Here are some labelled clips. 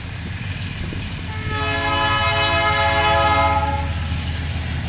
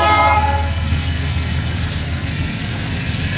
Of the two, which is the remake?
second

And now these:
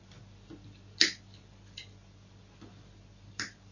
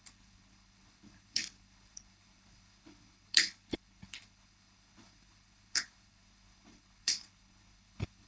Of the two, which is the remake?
second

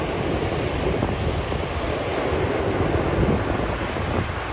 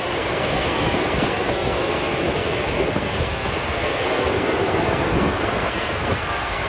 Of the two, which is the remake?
second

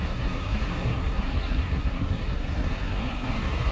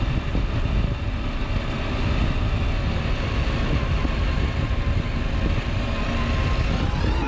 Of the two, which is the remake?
first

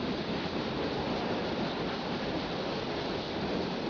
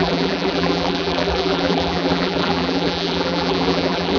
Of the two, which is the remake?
second